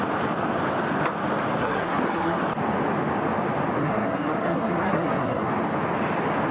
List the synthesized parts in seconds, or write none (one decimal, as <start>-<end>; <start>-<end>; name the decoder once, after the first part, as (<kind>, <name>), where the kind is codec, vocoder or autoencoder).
1.6-2.4 (codec, SNAC); 3.8-5.5